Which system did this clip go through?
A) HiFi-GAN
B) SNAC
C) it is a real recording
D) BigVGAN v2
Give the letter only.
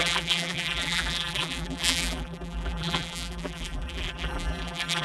D